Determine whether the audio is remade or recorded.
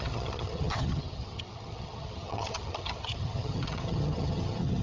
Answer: remade